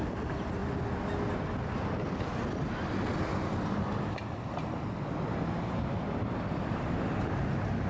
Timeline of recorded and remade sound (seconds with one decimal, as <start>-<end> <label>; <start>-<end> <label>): 0.0-7.9 recorded